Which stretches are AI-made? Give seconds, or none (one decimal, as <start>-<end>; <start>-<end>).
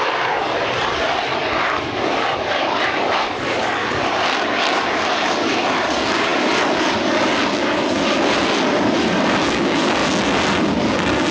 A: 0.0-10.0; 10.8-11.3